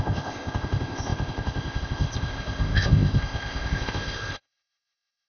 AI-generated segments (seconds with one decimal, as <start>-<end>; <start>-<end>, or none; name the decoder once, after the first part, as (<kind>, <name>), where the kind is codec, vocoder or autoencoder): 0.0-5.3 (codec, ZipCodec)